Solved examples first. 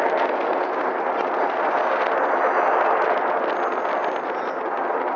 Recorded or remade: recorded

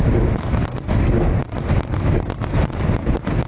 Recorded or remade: recorded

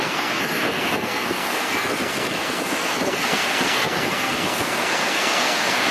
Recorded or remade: remade